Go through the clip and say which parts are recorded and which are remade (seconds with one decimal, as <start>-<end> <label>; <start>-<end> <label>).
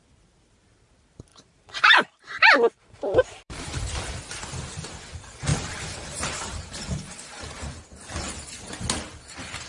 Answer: 0.0-1.3 recorded; 1.3-3.8 remade; 3.8-5.5 recorded; 5.5-7.6 remade; 7.6-9.7 recorded